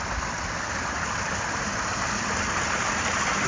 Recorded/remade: recorded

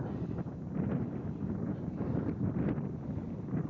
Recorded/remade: recorded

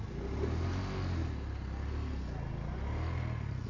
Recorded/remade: recorded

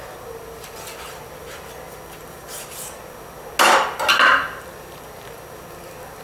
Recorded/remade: recorded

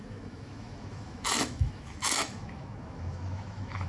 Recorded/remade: remade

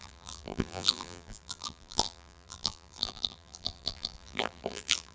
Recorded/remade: remade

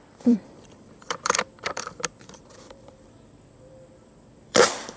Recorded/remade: remade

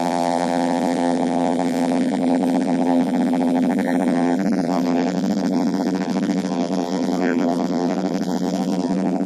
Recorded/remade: remade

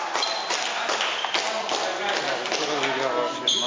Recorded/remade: recorded